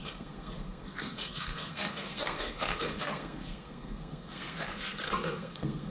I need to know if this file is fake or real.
fake